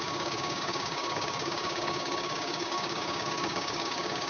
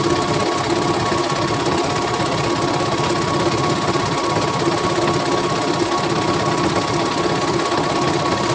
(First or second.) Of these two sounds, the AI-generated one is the first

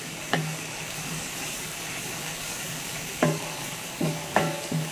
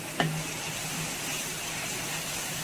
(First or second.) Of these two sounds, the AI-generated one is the first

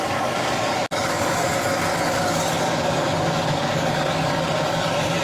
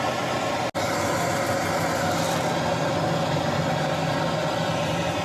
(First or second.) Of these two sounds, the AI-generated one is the first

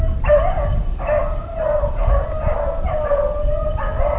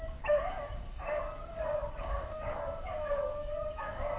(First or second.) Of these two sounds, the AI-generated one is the second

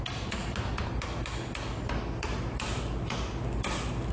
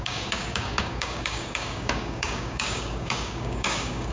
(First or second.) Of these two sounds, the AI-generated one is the second